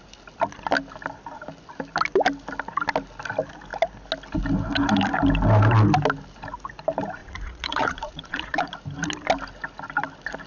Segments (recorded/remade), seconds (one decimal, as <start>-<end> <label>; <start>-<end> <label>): 0.0-7.2 recorded; 7.2-8.7 remade; 8.7-10.5 recorded